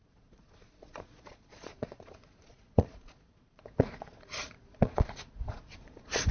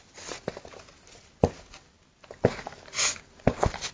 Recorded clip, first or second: second